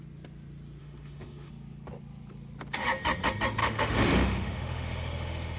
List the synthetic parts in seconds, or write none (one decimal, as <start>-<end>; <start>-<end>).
0.8-1.5; 3.6-5.6